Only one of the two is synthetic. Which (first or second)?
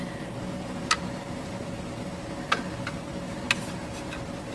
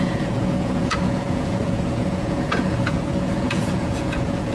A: second